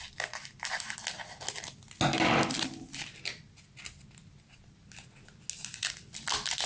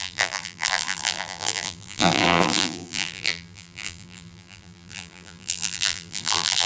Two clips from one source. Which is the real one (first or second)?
first